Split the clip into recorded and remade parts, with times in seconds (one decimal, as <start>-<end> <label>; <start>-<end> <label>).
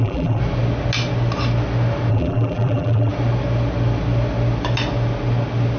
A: 0.0-0.4 remade; 0.4-2.1 recorded; 2.1-3.1 remade; 3.1-5.8 recorded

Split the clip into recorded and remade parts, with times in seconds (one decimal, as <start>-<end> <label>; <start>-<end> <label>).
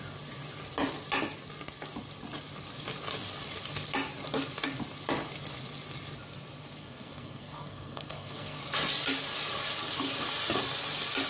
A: 0.0-6.8 recorded; 6.8-8.6 remade; 8.6-11.3 recorded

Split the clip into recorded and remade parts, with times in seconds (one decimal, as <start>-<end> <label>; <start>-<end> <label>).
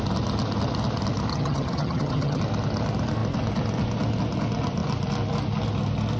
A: 0.0-1.3 recorded; 1.3-2.4 remade; 2.4-6.2 recorded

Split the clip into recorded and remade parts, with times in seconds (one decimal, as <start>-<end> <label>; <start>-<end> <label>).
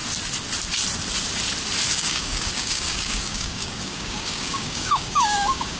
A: 0.0-1.9 recorded; 1.9-5.8 remade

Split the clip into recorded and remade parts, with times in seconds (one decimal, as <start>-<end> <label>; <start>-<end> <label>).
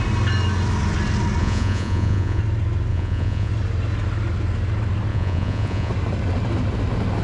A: 0.0-1.4 recorded; 1.4-2.4 remade; 2.4-2.9 recorded; 2.9-3.5 remade; 3.5-5.1 recorded; 5.1-5.9 remade; 5.9-7.2 recorded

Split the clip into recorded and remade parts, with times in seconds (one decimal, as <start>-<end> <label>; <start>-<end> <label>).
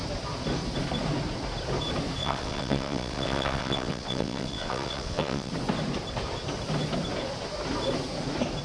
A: 0.0-2.2 recorded; 2.2-5.5 remade; 5.5-8.6 recorded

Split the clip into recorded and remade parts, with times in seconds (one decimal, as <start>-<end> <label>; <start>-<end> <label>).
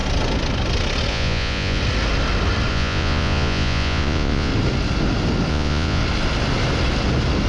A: 0.0-1.1 recorded; 1.1-1.8 remade; 1.8-2.7 recorded; 2.7-4.5 remade; 4.5-5.5 recorded; 5.5-6.0 remade; 6.0-7.5 recorded